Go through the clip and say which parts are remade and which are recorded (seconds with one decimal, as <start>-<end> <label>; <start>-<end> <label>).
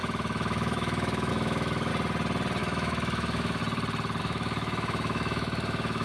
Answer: 0.0-1.9 remade; 1.9-2.6 recorded; 2.6-3.6 remade; 3.6-4.2 recorded; 4.2-6.0 remade